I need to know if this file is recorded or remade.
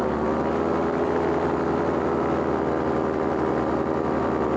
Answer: remade